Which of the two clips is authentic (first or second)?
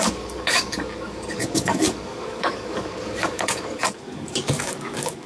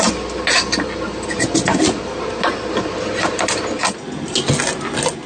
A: second